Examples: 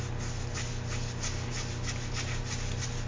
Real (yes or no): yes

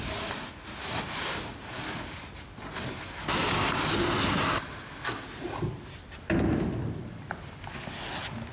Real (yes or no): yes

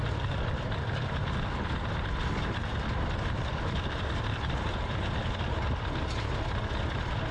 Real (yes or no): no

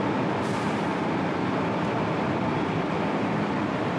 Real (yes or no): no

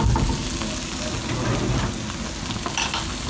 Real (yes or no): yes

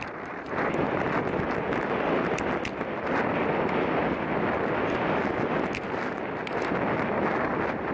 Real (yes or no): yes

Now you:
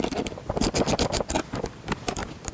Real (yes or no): no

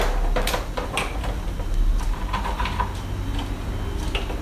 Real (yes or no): yes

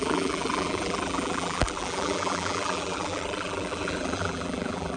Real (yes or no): no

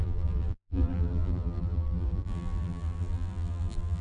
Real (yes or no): no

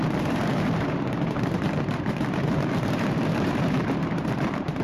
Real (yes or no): no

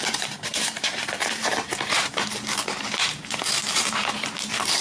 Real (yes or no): no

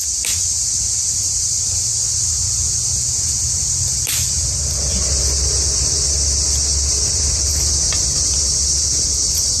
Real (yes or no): yes